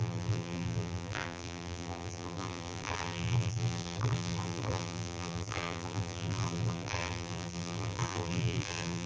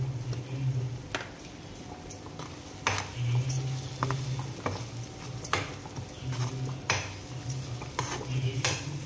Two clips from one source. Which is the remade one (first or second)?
first